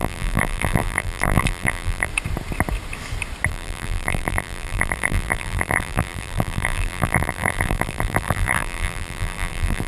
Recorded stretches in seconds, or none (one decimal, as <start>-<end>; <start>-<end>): 2.1-3.5